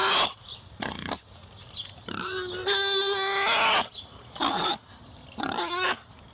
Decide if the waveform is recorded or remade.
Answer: recorded